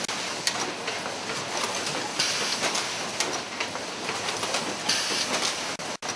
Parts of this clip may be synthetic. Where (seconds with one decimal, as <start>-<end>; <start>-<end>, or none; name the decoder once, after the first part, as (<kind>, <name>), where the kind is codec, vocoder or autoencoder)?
none